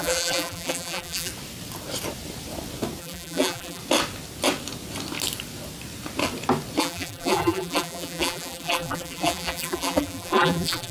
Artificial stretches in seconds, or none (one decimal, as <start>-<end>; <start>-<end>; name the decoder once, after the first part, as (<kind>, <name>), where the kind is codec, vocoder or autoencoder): 0.0-1.3 (vocoder, BigVGAN v2); 3.0-3.8; 6.8-10.9